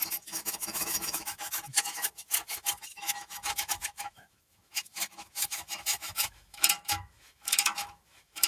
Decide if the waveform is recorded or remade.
remade